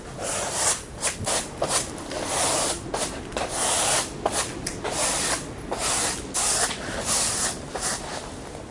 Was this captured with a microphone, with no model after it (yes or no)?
yes